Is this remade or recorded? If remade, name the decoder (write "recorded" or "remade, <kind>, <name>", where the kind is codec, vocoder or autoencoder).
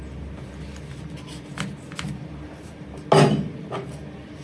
recorded